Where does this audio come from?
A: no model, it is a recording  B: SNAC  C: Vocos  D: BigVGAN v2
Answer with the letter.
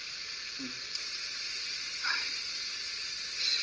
A